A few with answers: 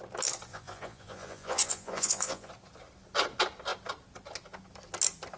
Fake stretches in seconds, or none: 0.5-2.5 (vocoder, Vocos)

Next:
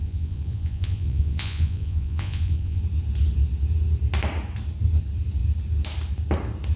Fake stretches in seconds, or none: 0.0-2.8 (vocoder, Vocos)

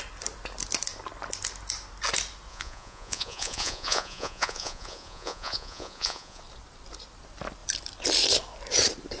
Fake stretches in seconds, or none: 2.5-6.4 (vocoder, Vocos)

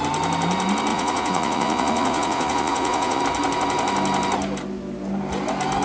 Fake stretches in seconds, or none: 0.9-3.2 (vocoder, Vocos)

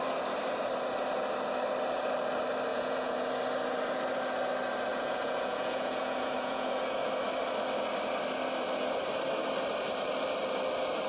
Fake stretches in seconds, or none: 2.7-3.3 (vocoder, Vocos); 4.9-7.1